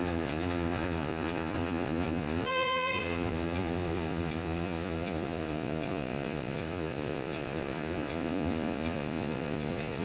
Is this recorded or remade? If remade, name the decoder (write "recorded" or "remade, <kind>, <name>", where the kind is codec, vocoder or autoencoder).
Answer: remade, vocoder, Vocos